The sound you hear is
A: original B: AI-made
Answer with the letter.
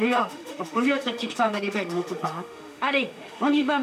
B